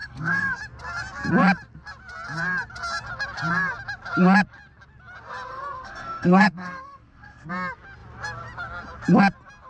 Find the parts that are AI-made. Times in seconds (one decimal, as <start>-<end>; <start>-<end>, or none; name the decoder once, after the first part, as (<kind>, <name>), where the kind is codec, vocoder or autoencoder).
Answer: 0.0-0.6 (codec, SNAC); 5.5-7.5